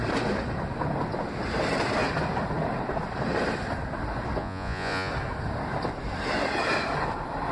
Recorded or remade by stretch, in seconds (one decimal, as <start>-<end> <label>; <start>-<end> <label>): 0.0-4.4 recorded; 4.4-5.1 remade; 5.1-7.5 recorded